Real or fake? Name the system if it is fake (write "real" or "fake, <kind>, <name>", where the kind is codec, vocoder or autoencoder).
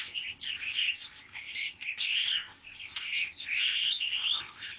fake, codec, ZipCodec